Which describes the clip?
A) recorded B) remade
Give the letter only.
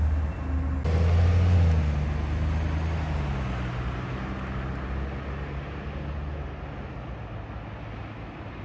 A